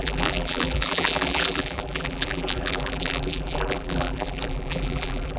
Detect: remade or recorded remade